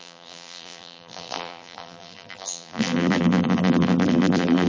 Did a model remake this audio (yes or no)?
yes